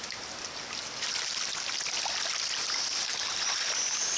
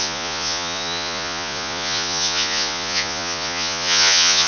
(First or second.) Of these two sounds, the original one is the first